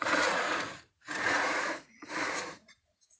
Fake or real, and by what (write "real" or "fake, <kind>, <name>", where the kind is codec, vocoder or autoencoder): fake, vocoder, Vocos